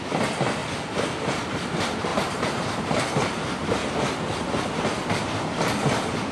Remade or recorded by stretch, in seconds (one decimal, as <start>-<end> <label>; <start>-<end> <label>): 0.0-2.1 recorded; 2.1-2.9 remade; 2.9-3.8 recorded; 3.8-4.8 remade; 4.8-6.3 recorded